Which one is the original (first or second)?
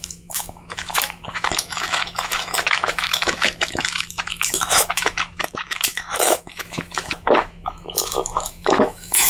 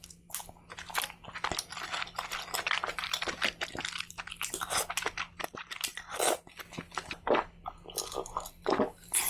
second